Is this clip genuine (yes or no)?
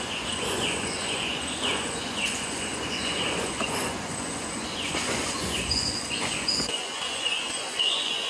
no